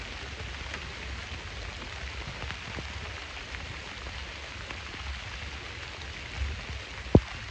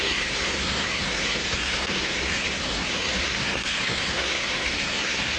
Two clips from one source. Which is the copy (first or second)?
second